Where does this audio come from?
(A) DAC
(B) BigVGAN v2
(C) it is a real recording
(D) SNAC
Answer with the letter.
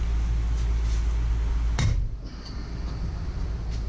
C